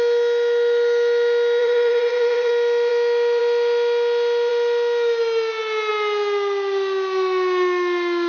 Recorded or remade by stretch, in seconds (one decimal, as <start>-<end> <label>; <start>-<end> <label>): 0.0-1.6 recorded; 1.6-2.5 remade; 2.5-8.3 recorded